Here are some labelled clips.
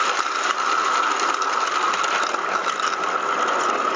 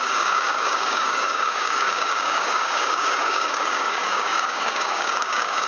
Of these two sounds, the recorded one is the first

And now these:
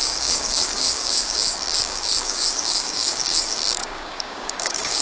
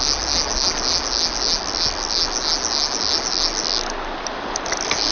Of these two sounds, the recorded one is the second